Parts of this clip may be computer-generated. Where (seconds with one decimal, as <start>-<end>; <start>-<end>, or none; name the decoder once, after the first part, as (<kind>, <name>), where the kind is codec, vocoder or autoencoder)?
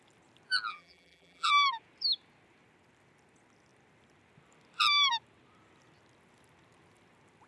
0.7-1.5 (vocoder, BigVGAN v2)